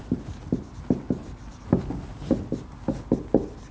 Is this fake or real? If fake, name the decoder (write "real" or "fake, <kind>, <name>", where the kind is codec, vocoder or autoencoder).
real